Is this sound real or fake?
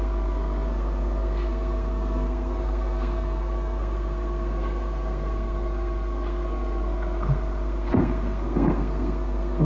fake